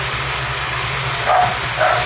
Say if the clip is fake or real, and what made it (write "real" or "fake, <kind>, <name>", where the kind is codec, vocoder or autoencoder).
real